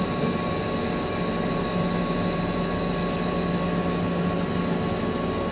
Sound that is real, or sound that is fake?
real